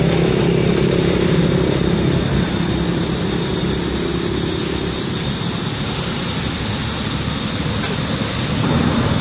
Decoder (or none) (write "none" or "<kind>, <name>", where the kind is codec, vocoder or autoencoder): none